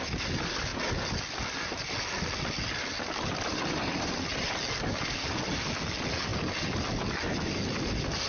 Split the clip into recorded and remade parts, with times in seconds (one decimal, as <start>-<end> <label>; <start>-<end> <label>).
0.0-8.3 recorded

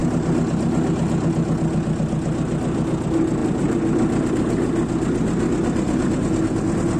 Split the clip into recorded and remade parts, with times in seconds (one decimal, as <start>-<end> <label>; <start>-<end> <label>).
0.0-7.0 recorded

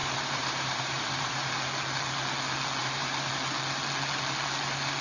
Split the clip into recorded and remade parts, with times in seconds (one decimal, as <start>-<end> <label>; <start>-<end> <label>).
0.0-1.5 remade; 1.5-2.8 recorded; 2.8-3.3 remade; 3.3-5.0 recorded

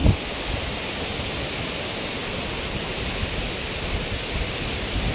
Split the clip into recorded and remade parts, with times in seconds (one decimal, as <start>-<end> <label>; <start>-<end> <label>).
0.0-5.1 recorded

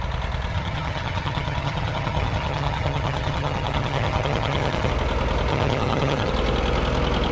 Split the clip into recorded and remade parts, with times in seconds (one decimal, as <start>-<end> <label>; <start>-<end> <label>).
0.0-0.5 recorded; 0.5-4.9 remade; 4.9-5.5 recorded; 5.5-6.3 remade; 6.3-7.3 recorded

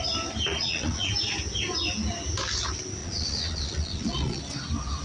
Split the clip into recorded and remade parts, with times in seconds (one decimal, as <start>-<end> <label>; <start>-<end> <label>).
0.0-0.5 recorded; 0.5-1.1 remade; 1.1-3.0 recorded; 3.0-4.4 remade; 4.4-5.0 recorded

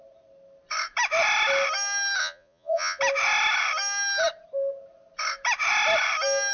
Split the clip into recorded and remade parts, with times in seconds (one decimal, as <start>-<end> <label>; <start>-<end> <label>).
0.0-2.2 recorded; 2.2-3.0 remade; 3.0-6.5 recorded

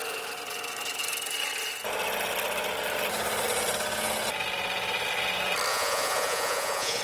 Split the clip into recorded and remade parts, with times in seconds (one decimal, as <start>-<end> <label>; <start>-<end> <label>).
0.0-5.7 recorded; 5.7-7.0 remade